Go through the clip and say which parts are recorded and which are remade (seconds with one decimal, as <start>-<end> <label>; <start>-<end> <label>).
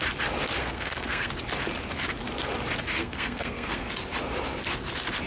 0.0-0.6 recorded; 0.6-1.3 remade; 1.3-3.0 recorded; 3.0-3.9 remade; 3.9-5.3 recorded